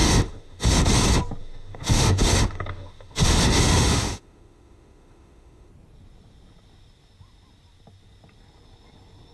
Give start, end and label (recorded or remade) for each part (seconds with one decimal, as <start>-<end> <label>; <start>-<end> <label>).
0.0-0.8 remade; 0.8-1.4 recorded; 1.4-5.7 remade; 5.7-9.3 recorded